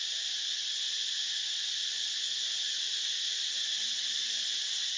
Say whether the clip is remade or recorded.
recorded